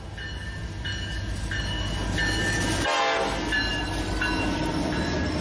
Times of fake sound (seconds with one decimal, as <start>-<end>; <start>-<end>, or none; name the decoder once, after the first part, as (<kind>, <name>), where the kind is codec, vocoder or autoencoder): none